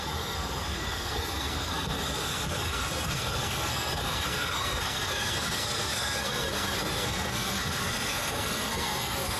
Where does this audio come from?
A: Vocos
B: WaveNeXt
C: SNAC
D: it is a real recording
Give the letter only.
C